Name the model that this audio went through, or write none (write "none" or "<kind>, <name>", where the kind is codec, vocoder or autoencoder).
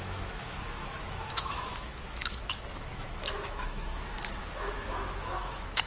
autoencoder, DAC-VAE